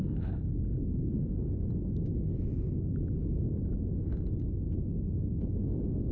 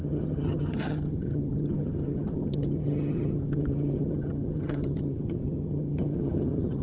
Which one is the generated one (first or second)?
second